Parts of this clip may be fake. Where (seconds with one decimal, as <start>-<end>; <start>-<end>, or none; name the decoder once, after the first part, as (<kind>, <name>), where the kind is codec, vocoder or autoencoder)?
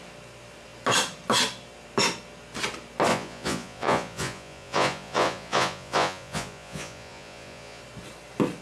3.1-7.8 (vocoder, Vocos)